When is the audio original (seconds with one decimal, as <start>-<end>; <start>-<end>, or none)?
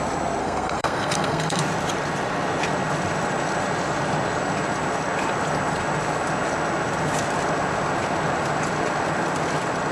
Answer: 0.0-0.4; 1.6-9.9